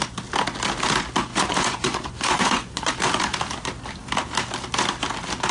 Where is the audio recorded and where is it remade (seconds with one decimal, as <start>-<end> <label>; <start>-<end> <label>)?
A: 0.0-1.3 recorded; 1.3-2.9 remade; 2.9-5.5 recorded